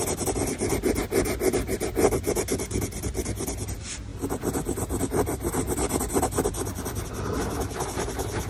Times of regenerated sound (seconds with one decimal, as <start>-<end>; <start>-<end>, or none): none